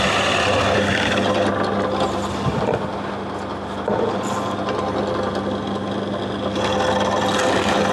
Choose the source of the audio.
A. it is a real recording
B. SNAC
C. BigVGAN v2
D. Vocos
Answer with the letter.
A